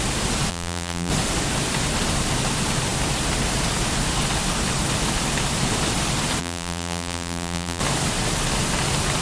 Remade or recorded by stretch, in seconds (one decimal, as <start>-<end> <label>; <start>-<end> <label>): 0.0-0.5 recorded; 0.5-1.1 remade; 1.1-6.4 recorded; 6.4-7.8 remade; 7.8-9.2 recorded